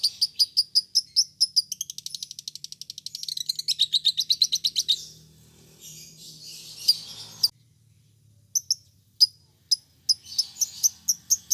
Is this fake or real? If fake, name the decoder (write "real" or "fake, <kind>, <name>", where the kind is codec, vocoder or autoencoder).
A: real